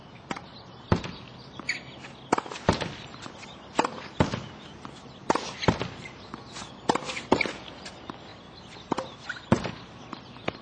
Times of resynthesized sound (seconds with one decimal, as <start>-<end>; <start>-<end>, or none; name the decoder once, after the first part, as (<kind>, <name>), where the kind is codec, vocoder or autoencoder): none